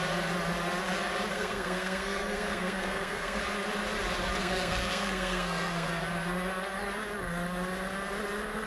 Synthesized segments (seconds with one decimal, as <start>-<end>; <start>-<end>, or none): 1.3-3.4; 4.4-6.0